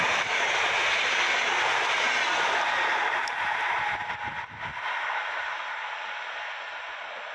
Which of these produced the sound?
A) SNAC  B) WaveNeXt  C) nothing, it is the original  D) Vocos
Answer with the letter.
C